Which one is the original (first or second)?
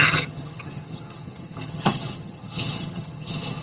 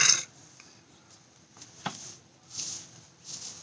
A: second